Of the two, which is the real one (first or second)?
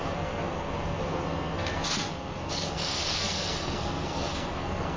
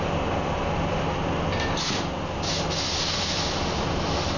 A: second